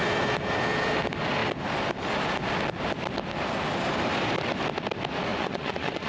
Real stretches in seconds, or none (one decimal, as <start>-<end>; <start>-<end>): 0.0-5.3